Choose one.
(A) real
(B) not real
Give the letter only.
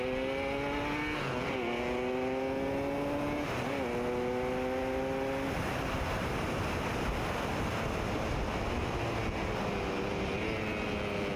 A